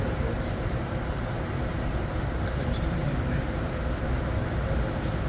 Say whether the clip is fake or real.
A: fake